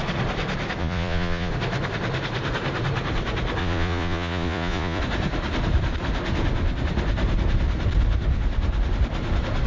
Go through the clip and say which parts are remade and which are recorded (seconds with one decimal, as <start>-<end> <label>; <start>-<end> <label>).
0.0-0.8 recorded; 0.8-1.5 remade; 1.5-3.6 recorded; 3.6-5.0 remade; 5.0-9.7 recorded